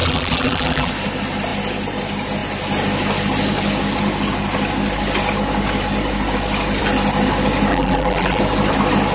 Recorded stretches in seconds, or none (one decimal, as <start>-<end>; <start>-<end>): 0.9-7.7; 8.4-9.1